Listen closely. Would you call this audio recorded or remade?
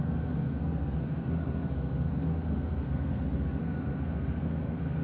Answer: remade